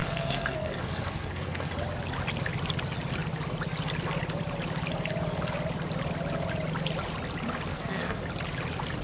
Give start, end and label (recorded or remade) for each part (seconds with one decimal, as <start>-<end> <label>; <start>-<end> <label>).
0.0-1.7 remade; 1.7-7.7 recorded; 7.7-8.2 remade; 8.2-9.0 recorded